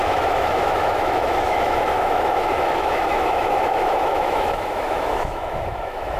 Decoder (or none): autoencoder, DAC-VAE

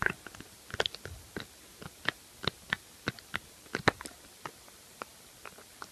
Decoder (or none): none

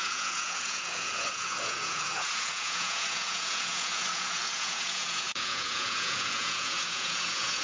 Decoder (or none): vocoder, Vocos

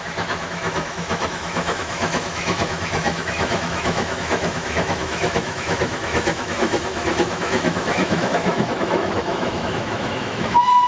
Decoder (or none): autoencoder, DAC-VAE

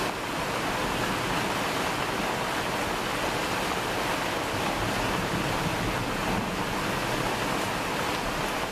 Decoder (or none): none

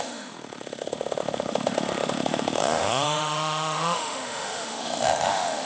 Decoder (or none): autoencoder, DAC-VAE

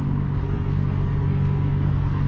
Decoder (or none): codec, SNAC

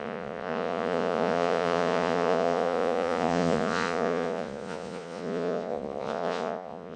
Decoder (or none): vocoder, Vocos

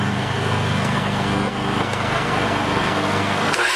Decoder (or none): codec, SNAC